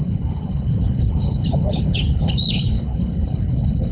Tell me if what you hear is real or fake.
fake